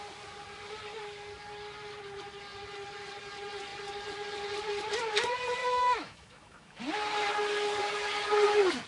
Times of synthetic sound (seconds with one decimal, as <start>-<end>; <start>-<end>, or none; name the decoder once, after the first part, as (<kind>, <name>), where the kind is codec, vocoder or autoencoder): 5.6-6.8 (autoencoder, DAC-VAE)